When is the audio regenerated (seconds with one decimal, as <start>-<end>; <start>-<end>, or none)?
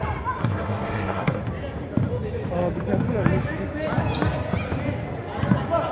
0.4-1.4